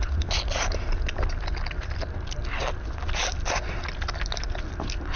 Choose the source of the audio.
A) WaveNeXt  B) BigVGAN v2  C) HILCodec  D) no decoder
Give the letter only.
D